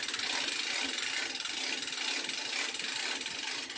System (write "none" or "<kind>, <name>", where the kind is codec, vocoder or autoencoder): none